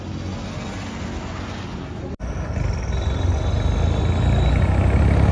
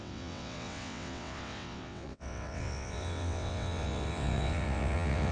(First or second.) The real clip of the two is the first